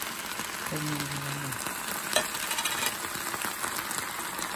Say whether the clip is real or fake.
real